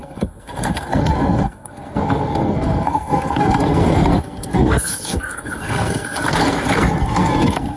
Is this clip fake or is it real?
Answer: fake